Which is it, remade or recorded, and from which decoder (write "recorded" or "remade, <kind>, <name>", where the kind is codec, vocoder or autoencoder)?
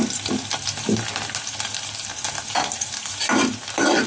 remade, vocoder, BigVGAN v2